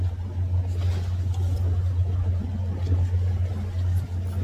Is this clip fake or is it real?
real